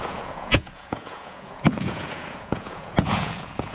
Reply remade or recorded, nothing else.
remade